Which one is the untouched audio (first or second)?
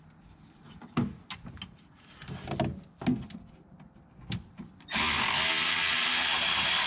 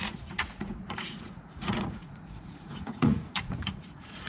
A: first